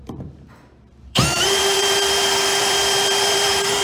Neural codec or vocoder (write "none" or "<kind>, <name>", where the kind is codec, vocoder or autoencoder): vocoder, BigVGAN v2